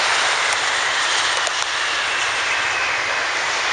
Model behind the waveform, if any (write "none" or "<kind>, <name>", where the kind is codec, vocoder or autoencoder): none